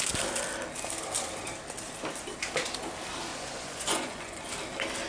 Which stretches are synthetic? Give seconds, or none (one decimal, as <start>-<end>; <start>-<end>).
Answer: 3.3-4.5